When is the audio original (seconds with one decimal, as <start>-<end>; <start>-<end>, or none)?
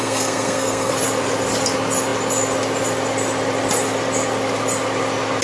0.9-5.4